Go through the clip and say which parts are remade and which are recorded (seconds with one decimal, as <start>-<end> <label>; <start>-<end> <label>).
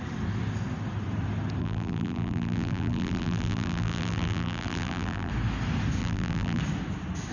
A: 0.0-1.6 recorded; 1.6-5.3 remade; 5.3-6.0 recorded; 6.0-6.6 remade; 6.6-7.3 recorded